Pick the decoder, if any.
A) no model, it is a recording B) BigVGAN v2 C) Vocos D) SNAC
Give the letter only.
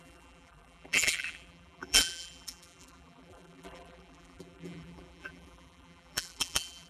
B